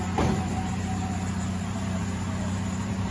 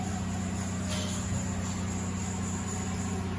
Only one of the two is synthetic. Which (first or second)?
first